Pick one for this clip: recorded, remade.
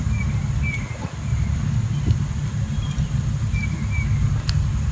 recorded